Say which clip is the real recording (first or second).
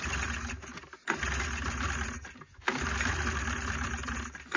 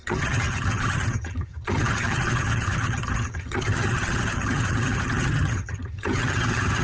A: first